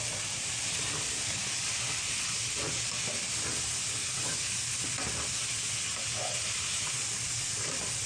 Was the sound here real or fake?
real